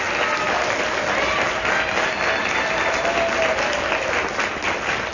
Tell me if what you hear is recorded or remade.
recorded